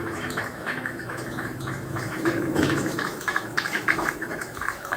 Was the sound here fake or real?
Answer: fake